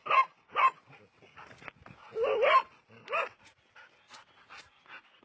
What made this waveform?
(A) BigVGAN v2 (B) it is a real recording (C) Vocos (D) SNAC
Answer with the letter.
B